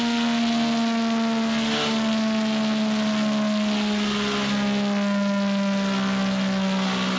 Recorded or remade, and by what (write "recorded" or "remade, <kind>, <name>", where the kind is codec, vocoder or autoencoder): recorded